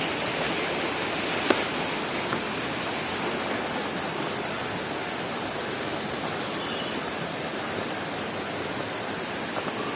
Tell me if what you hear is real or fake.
real